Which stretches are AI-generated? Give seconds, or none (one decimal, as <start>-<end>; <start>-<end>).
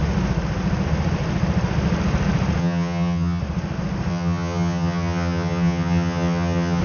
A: 2.6-3.4; 4.1-6.8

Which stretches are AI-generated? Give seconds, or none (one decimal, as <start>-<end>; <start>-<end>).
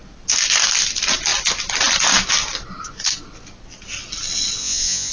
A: 4.6-5.1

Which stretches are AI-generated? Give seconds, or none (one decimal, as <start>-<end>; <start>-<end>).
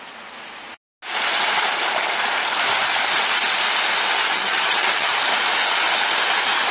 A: 4.2-5.1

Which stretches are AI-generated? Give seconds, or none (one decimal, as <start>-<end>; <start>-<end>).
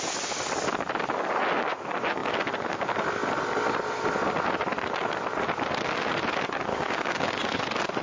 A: 6.7-7.4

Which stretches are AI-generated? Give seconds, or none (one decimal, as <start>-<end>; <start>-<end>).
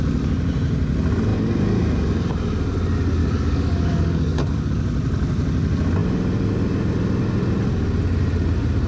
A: 3.2-4.7